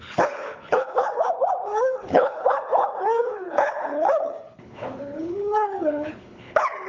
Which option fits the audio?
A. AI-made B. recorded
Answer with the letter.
A